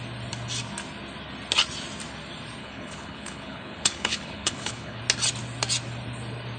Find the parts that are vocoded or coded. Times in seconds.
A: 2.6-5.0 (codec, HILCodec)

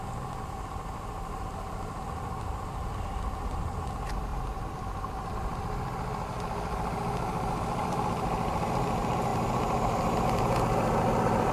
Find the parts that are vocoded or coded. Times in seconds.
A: 4.3-5.3 (vocoder, BigVGAN v2)

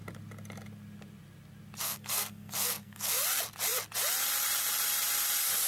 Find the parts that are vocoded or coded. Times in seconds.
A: 1.8-3.2 (codec, SNAC)